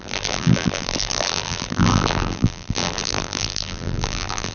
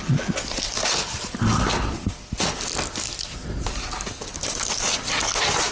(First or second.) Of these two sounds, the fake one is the first